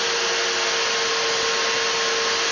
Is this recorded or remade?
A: recorded